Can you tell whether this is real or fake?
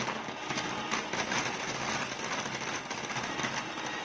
real